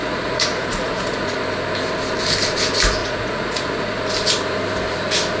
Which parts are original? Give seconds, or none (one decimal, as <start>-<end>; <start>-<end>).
1.4-3.0; 4.0-5.4